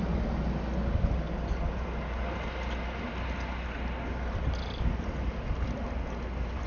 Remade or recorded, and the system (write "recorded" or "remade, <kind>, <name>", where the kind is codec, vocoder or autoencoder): recorded